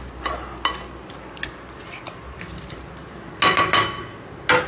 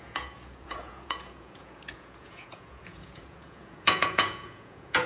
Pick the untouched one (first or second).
first